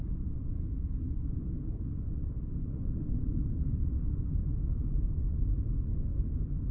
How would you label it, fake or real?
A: real